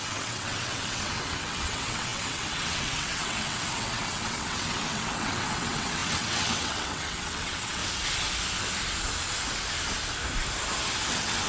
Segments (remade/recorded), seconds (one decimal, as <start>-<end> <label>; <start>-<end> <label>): 0.0-7.8 remade; 7.8-11.1 recorded; 11.1-11.5 remade